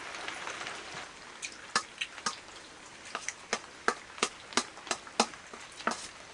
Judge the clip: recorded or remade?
recorded